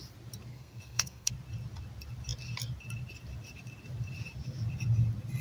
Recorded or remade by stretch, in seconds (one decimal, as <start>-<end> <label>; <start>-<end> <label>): 0.0-0.5 recorded; 0.5-1.3 remade; 1.3-5.4 recorded